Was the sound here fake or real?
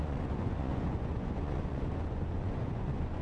fake